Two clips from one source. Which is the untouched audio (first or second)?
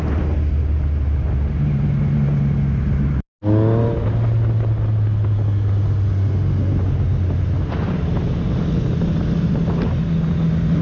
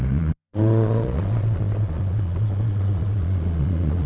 first